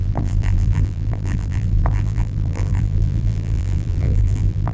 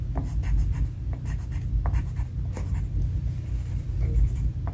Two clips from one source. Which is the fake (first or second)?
first